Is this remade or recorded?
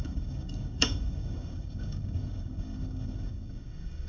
remade